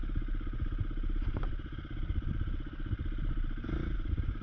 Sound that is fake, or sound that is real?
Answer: real